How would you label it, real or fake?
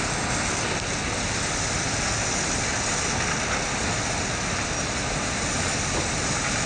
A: real